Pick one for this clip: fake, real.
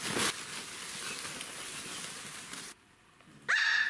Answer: real